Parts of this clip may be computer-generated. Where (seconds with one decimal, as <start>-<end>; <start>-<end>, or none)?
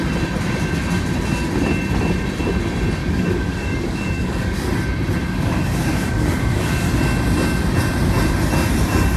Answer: 3.0-4.7; 5.2-6.7